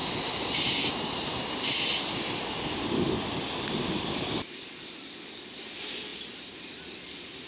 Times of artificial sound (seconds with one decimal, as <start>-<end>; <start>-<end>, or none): none